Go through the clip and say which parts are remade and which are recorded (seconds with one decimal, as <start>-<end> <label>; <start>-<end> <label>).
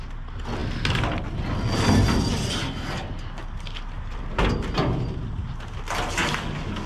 0.0-6.9 recorded